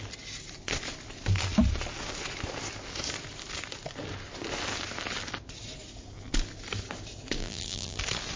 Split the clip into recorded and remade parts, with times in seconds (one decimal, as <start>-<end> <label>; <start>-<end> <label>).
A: 0.0-7.4 recorded; 7.4-8.0 remade; 8.0-8.4 recorded

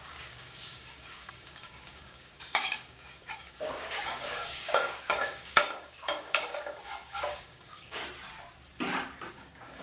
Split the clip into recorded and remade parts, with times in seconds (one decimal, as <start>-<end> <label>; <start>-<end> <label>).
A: 0.0-8.0 remade; 8.0-9.3 recorded; 9.3-9.8 remade

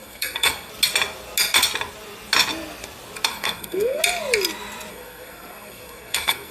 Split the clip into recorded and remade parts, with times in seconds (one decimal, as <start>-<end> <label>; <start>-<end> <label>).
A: 0.0-0.7 remade; 0.7-3.3 recorded; 3.3-4.0 remade; 4.0-4.9 recorded; 4.9-6.5 remade

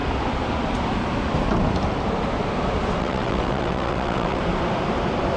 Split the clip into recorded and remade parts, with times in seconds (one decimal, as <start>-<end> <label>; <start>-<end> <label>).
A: 0.0-3.0 recorded; 3.0-4.4 remade; 4.4-5.4 recorded

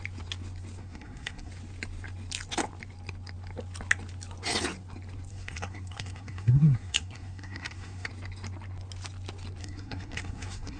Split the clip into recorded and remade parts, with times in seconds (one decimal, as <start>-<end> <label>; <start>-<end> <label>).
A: 0.0-0.8 recorded; 0.8-1.5 remade; 1.5-5.3 recorded; 5.3-8.1 remade; 8.1-9.6 recorded; 9.6-10.8 remade

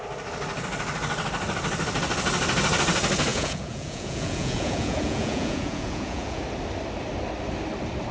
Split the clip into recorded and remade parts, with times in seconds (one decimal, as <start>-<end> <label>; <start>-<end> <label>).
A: 0.0-3.3 recorded; 3.3-6.4 remade; 6.4-8.1 recorded